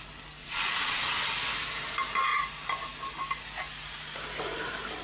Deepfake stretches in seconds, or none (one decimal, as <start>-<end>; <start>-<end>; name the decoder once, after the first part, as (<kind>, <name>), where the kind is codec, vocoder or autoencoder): 0.4-1.3 (vocoder, WaveNeXt)